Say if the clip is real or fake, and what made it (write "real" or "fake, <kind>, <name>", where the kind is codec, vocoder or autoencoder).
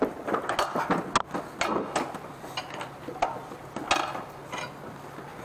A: real